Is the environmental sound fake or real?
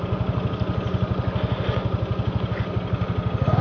real